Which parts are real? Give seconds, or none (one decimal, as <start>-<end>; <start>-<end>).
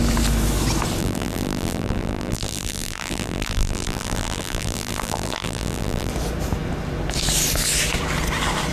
0.0-1.0; 6.1-8.7